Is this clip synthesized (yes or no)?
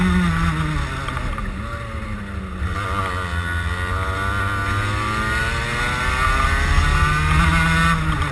no